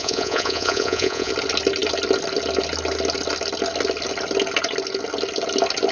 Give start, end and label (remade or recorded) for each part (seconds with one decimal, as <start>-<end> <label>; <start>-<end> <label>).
0.0-1.3 remade; 1.3-5.9 recorded